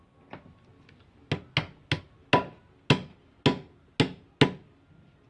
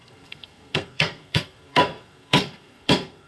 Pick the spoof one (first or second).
second